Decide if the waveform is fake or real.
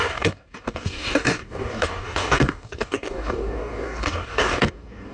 fake